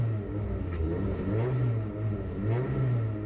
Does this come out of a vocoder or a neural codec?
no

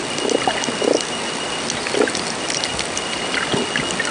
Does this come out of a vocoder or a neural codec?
no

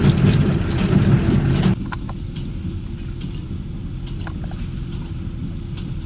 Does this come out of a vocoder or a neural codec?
no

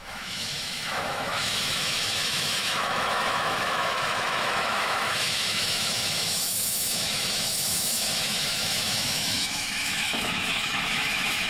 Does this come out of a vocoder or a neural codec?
yes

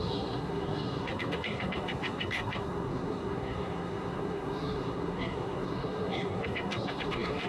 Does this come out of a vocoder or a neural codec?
yes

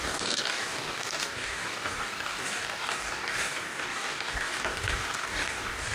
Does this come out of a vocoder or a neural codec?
yes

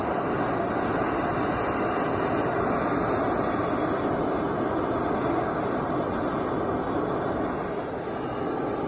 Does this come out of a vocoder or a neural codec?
no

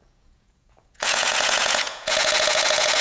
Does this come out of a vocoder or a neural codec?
yes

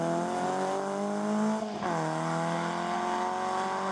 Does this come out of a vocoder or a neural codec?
no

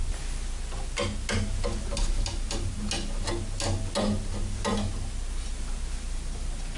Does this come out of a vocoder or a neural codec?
no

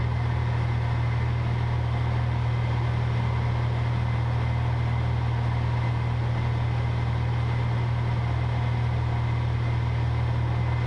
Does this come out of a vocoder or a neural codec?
no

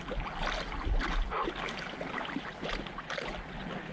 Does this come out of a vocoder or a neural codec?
no